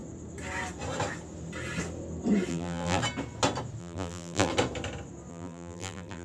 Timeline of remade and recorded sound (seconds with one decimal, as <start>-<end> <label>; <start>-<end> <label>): 0.0-2.5 recorded; 2.5-3.0 remade; 3.0-3.8 recorded; 3.8-4.5 remade; 4.5-5.3 recorded; 5.3-6.2 remade